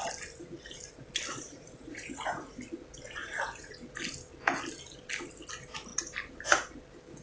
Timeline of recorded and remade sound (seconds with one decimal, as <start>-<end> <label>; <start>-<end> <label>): 0.0-1.3 recorded; 1.3-2.6 remade; 2.6-3.2 recorded; 3.2-3.7 remade; 3.7-7.2 recorded